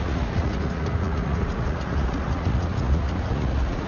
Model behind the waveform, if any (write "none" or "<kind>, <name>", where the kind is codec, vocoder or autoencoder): vocoder, Vocos